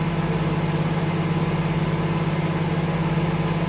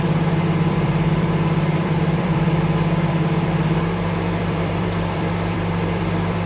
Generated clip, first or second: second